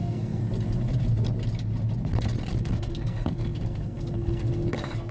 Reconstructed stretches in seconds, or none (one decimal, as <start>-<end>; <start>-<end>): 0.0-0.4; 2.6-5.1